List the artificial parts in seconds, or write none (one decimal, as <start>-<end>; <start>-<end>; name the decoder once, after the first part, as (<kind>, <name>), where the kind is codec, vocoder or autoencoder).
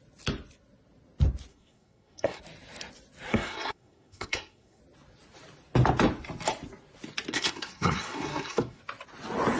1.5-2.4 (codec, SNAC); 3.3-4.8; 7.3-8.8